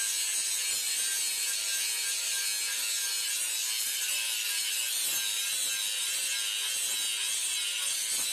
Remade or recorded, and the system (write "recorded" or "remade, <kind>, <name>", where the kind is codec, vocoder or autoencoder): recorded